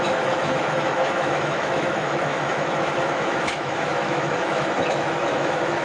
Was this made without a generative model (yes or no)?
no